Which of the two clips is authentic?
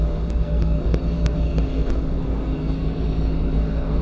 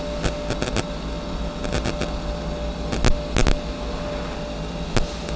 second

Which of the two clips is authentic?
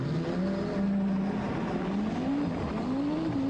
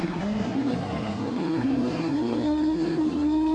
first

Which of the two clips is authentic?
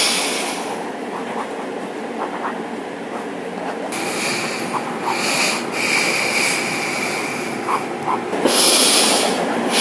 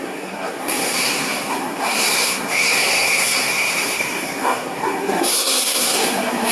first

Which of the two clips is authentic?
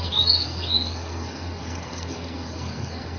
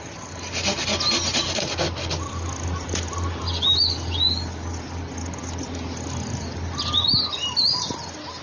second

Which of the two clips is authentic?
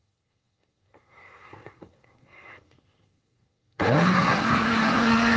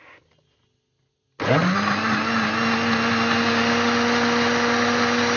second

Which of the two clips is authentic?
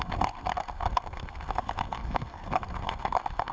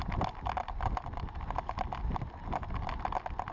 second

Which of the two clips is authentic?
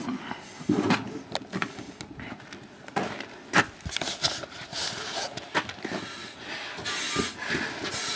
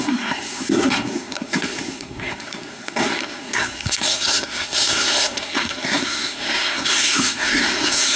first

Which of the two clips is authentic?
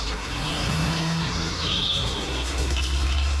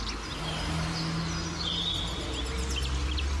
second